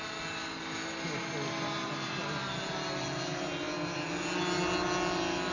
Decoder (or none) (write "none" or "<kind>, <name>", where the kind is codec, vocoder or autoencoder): none